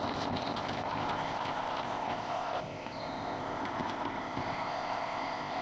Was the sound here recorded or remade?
remade